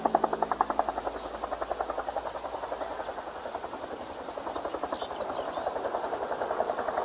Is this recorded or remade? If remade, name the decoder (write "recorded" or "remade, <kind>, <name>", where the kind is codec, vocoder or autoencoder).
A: recorded